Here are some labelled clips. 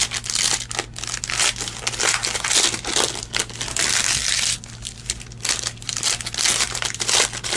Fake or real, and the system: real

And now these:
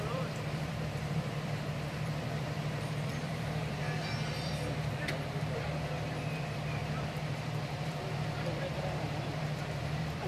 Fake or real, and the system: fake, vocoder, BigVGAN v2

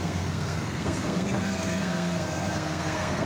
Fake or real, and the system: fake, codec, SNAC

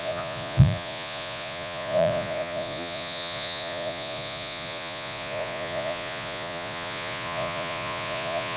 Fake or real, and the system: fake, vocoder, Vocos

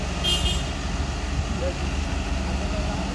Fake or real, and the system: real